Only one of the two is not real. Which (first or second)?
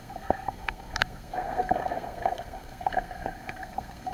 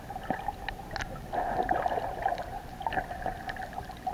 first